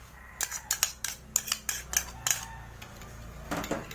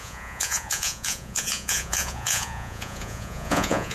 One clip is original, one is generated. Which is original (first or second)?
first